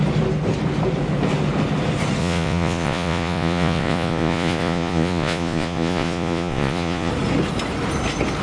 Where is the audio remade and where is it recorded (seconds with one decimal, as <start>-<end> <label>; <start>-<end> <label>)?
0.0-2.2 recorded; 2.2-7.1 remade; 7.1-8.4 recorded